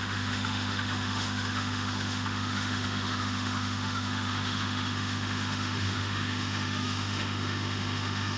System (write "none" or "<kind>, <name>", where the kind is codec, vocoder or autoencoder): autoencoder, DAC-VAE